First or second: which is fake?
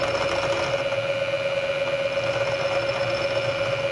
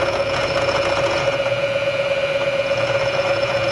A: second